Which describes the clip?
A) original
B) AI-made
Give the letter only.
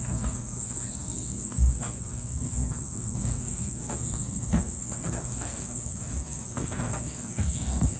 B